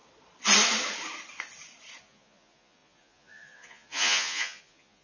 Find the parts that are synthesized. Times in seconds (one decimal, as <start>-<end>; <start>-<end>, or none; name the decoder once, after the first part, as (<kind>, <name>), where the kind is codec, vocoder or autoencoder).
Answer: 2.0-5.0 (vocoder, Vocos)